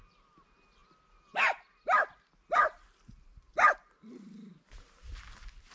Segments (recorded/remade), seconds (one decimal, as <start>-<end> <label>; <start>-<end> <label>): 0.0-5.7 recorded

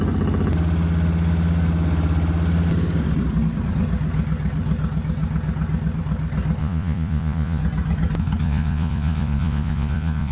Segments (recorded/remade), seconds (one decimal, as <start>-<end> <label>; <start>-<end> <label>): 0.0-6.6 recorded; 6.6-7.6 remade; 7.6-8.4 recorded; 8.4-10.3 remade

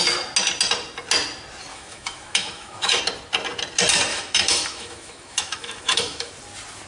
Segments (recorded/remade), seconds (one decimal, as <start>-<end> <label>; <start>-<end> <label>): 0.0-1.7 recorded; 1.7-3.0 remade; 3.0-4.1 recorded; 4.1-6.3 remade; 6.3-6.9 recorded

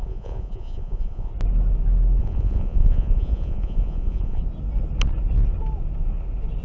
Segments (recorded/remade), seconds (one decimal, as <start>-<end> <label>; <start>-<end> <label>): 0.0-1.3 remade; 1.3-2.2 recorded; 2.2-4.4 remade; 4.4-6.6 recorded

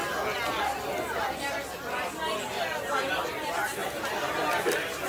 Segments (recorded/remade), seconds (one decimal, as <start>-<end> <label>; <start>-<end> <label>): 0.0-5.1 recorded

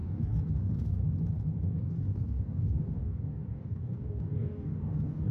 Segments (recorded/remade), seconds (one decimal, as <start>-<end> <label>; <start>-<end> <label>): 0.0-1.0 remade; 1.0-1.6 recorded; 1.6-5.3 remade

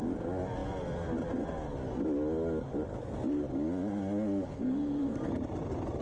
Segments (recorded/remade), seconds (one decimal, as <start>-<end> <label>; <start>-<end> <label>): 0.0-4.5 recorded; 4.5-5.3 remade; 5.3-6.0 recorded

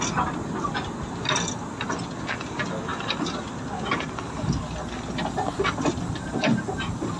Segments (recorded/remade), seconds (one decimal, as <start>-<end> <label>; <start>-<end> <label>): 0.0-7.2 recorded